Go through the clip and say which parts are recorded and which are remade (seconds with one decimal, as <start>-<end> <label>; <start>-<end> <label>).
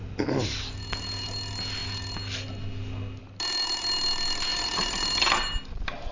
0.0-4.5 recorded; 4.5-6.1 remade